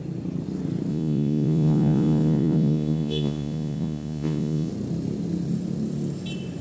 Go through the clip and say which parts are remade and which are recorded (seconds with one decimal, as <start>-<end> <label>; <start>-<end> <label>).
0.0-0.9 recorded; 0.9-4.7 remade; 4.7-6.6 recorded